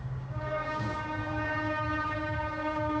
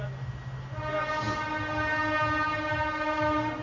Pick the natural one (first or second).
second